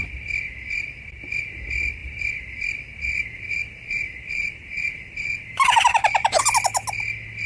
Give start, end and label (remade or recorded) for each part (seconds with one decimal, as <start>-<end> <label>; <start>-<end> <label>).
0.0-2.0 recorded; 2.0-6.4 remade; 6.4-7.5 recorded